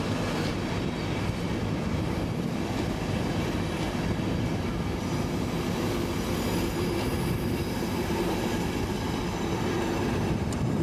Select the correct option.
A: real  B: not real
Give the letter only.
A